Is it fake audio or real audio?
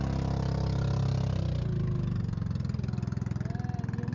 real